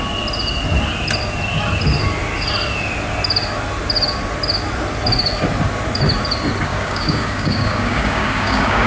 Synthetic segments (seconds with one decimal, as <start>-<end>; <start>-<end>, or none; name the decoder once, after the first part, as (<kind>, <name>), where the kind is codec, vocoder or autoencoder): 6.7-8.9 (codec, DAC)